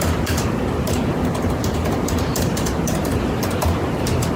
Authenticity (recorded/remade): remade